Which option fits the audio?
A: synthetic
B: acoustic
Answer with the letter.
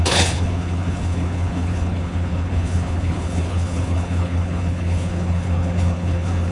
A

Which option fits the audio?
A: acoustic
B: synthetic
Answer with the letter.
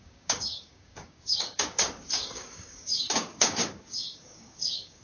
B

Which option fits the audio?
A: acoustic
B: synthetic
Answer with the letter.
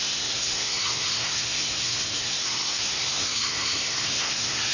B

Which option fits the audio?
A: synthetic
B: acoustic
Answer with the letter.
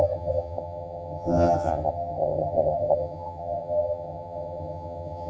A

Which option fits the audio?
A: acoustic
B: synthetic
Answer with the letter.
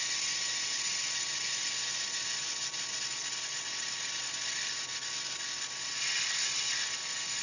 A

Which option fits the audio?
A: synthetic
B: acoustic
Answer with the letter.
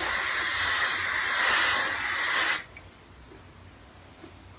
B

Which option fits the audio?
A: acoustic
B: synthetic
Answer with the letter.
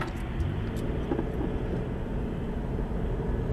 A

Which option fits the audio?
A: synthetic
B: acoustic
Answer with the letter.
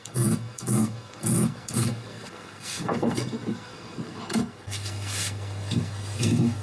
A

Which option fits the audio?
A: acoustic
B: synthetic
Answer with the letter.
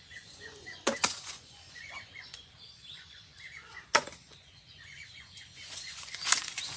B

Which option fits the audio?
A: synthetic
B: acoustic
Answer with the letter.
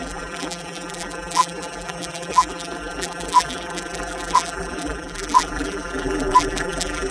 A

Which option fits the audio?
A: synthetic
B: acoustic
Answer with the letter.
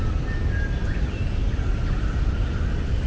B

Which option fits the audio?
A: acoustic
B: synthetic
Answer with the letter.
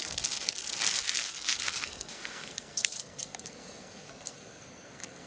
B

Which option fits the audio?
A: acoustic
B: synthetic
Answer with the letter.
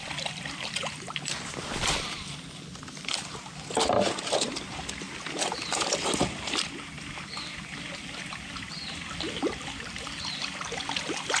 A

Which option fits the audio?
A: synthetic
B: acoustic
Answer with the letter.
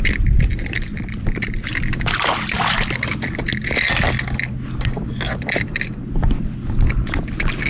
B